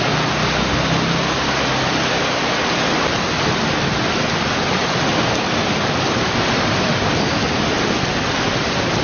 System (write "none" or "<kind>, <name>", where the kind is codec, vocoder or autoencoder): none